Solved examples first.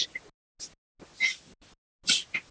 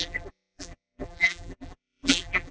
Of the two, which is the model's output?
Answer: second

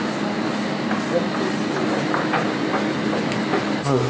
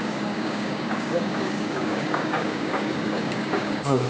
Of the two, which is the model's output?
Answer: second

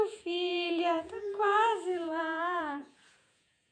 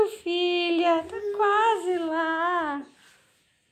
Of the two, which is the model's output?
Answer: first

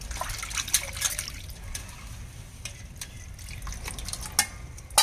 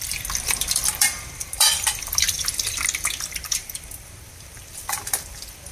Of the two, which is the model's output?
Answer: second